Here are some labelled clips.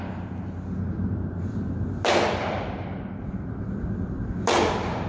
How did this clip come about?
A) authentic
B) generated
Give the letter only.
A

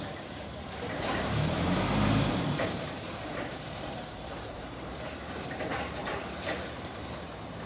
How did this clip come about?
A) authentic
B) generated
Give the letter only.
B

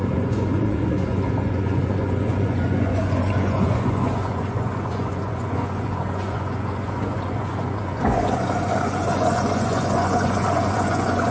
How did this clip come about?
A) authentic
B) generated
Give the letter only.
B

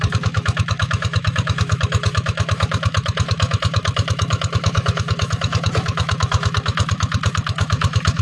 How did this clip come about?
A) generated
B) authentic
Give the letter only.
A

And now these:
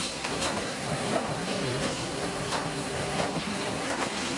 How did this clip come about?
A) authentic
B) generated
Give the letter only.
B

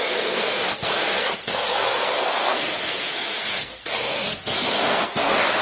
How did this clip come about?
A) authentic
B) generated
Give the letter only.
B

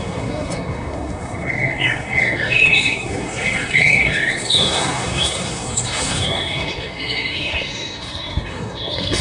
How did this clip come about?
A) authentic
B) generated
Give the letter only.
B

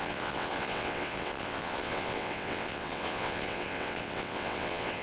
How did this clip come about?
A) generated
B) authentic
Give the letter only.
A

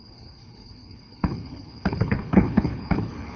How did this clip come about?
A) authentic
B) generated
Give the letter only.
B